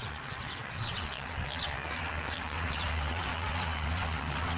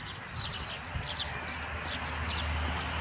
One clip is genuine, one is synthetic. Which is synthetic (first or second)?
first